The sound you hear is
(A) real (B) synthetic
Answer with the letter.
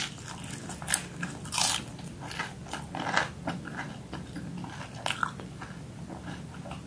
A